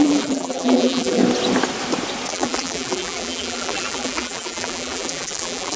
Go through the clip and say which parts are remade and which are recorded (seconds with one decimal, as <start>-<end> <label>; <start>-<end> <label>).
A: 0.0-1.2 remade; 1.2-2.3 recorded; 2.3-5.8 remade